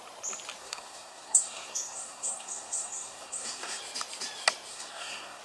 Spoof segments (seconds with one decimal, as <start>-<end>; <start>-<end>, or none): 0.6-3.8; 4.7-5.4

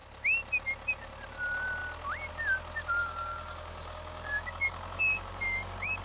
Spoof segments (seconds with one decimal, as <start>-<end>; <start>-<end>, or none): 3.0-6.0

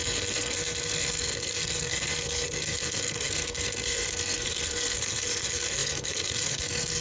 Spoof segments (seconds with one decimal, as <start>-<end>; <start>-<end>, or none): 0.0-7.0